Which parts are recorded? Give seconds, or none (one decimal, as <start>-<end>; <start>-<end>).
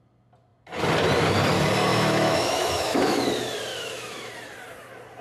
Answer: 0.0-1.9; 3.2-3.7; 4.3-5.2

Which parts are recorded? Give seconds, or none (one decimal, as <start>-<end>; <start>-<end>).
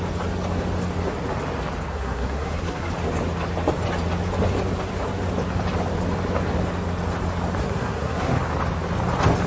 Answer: 0.0-1.9; 2.9-7.6; 8.4-9.5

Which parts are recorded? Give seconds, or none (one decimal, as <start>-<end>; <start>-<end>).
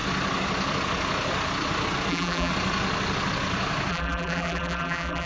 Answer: 0.0-2.1; 2.5-3.9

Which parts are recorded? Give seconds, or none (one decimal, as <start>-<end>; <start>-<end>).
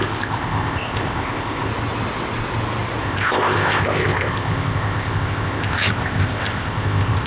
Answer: 1.7-3.0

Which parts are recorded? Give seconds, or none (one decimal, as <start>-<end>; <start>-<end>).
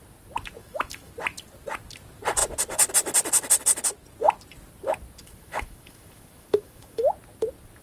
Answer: 0.0-0.6; 1.1-5.2; 7.1-7.8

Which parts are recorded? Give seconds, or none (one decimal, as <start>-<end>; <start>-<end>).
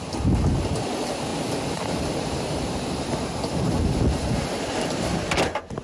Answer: 0.0-5.8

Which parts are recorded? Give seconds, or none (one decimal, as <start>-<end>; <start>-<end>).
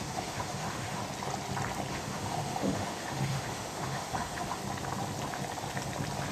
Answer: 1.0-1.9; 4.6-6.3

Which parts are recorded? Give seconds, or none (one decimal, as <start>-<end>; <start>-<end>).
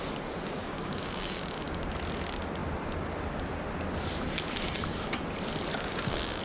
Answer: 0.0-0.6; 1.8-5.7